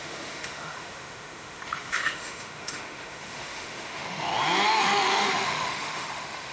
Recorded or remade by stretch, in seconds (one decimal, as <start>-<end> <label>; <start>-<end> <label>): 0.0-4.3 remade; 4.3-4.8 recorded; 4.8-6.5 remade